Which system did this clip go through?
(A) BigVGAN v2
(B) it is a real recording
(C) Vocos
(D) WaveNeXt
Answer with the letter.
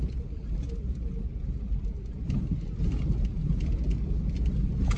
B